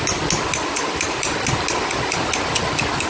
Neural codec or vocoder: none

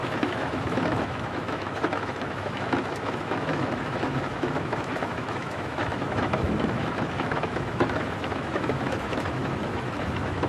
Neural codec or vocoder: autoencoder, DAC-VAE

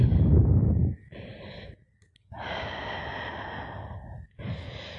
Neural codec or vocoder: none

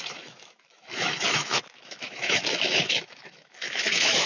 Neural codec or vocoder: autoencoder, DAC-VAE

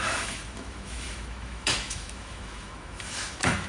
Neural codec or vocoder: autoencoder, DAC-VAE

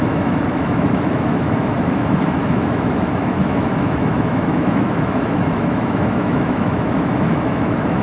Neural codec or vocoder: autoencoder, DAC-VAE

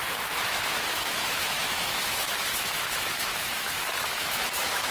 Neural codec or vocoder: autoencoder, DAC-VAE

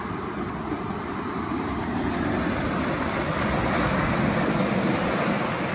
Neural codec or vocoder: none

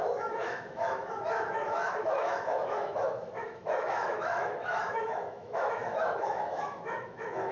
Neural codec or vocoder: autoencoder, DAC-VAE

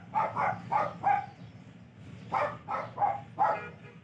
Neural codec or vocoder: none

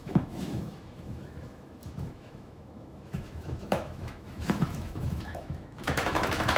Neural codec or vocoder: autoencoder, DAC-VAE